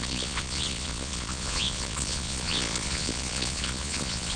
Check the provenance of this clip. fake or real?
fake